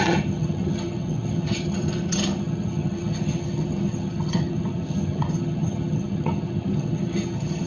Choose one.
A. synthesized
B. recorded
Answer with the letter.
A